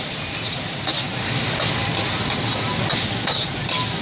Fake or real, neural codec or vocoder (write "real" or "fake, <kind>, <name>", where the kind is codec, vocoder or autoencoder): real